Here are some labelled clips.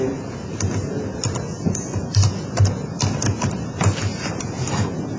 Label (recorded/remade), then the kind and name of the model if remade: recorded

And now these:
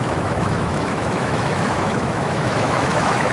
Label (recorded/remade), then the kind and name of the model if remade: remade, autoencoder, DAC-VAE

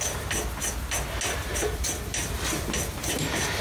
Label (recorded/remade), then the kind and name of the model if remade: recorded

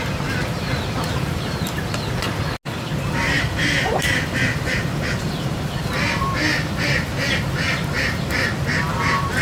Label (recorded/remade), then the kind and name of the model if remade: recorded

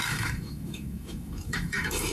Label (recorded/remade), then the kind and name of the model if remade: remade, autoencoder, DAC-VAE